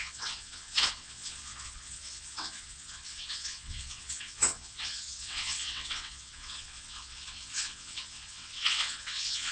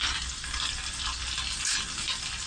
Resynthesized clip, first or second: first